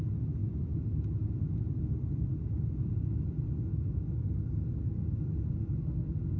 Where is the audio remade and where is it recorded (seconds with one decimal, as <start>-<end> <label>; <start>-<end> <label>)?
0.0-3.7 recorded; 3.7-4.6 remade; 4.6-6.4 recorded